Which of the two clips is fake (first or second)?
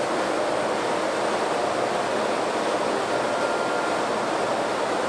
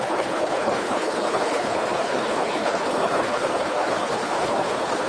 second